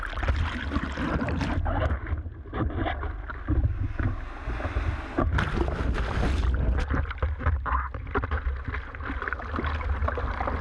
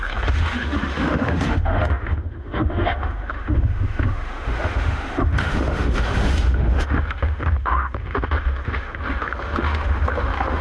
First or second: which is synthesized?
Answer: second